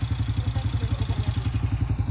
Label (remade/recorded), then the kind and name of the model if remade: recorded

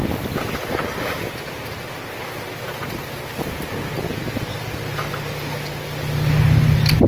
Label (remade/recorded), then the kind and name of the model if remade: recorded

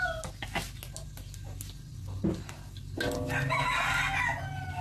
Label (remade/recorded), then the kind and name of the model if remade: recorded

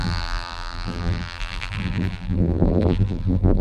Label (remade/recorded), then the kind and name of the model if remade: remade, vocoder, BigVGAN v2